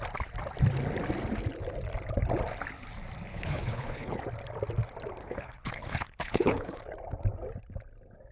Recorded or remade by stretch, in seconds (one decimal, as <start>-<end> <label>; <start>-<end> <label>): 0.0-3.3 recorded; 3.3-4.2 remade; 4.2-5.2 recorded; 5.2-6.8 remade; 6.8-8.3 recorded